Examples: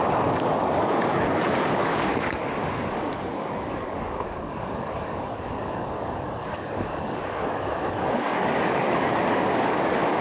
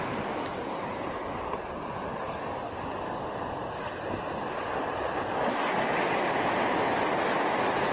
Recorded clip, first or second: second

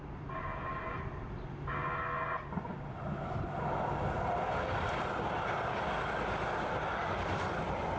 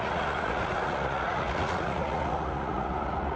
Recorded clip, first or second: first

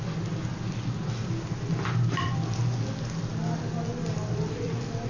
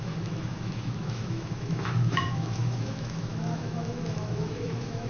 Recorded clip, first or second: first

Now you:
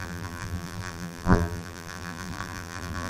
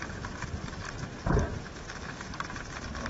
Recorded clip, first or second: second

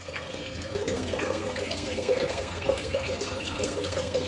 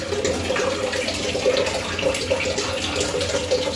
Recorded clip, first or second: second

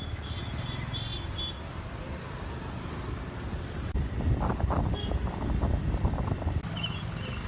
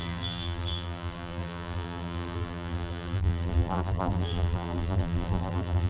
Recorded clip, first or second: first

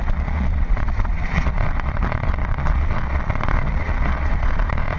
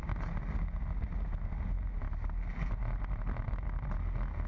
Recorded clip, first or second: second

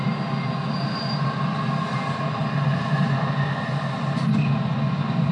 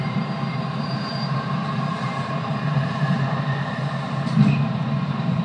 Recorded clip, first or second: first